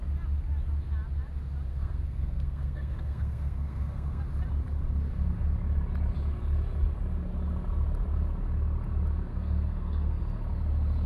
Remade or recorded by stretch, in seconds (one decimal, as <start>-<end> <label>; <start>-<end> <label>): 0.0-1.7 recorded; 1.7-4.2 remade; 4.2-9.3 recorded; 9.3-10.2 remade; 10.2-11.1 recorded

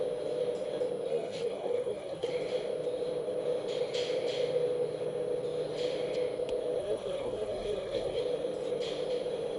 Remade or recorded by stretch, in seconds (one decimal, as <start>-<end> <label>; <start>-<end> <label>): 0.0-1.1 recorded; 1.1-2.3 remade; 2.3-6.8 recorded; 6.8-8.2 remade; 8.2-9.6 recorded

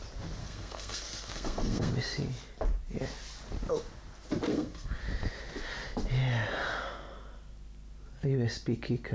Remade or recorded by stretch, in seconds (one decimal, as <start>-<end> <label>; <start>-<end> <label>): 0.0-0.4 recorded; 0.4-1.9 remade; 1.9-4.5 recorded; 4.5-5.0 remade; 5.0-9.1 recorded

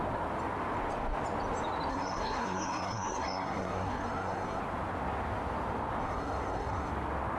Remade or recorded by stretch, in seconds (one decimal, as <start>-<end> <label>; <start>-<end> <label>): 0.0-1.9 recorded; 1.9-4.6 remade; 4.6-6.0 recorded; 6.0-6.9 remade; 6.9-7.4 recorded

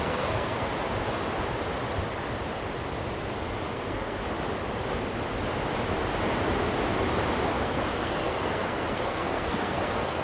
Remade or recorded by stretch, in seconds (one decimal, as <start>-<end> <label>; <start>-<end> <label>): 0.0-0.7 remade; 0.7-3.7 recorded; 3.7-4.2 remade; 4.2-7.5 recorded; 7.5-10.2 remade

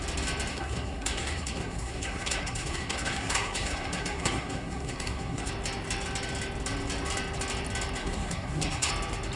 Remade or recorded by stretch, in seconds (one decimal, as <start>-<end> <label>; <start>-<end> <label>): 0.0-0.5 recorded; 0.5-5.5 remade; 5.5-8.0 recorded; 8.0-8.9 remade; 8.9-9.4 recorded

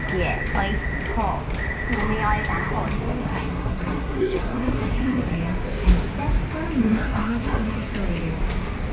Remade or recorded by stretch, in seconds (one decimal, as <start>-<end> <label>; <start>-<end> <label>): 0.0-3.2 recorded; 3.2-5.4 remade; 5.4-6.8 recorded; 6.8-7.9 remade; 7.9-8.9 recorded

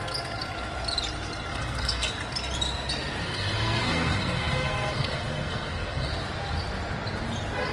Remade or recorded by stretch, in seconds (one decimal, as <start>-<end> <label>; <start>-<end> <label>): 0.0-1.5 recorded; 1.5-2.1 remade; 2.1-3.2 recorded; 3.2-6.1 remade; 6.1-7.7 recorded